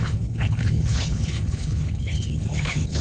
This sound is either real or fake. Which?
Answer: fake